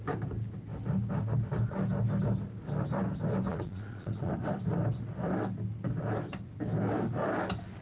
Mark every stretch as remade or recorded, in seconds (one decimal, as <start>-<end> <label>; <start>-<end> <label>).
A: 0.0-3.5 recorded; 3.5-4.3 remade; 4.3-7.8 recorded